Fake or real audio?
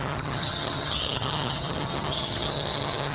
fake